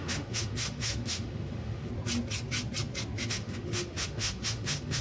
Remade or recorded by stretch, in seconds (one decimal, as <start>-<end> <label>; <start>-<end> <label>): 0.0-1.9 remade; 1.9-3.2 recorded; 3.2-5.0 remade